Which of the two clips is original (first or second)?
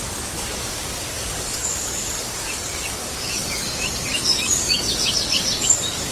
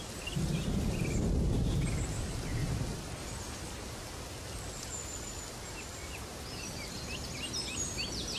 second